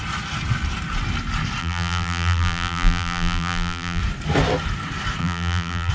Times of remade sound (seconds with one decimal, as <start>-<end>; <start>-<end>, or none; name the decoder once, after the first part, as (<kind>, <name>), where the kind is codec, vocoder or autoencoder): 1.6-4.0 (vocoder, BigVGAN v2); 5.2-5.9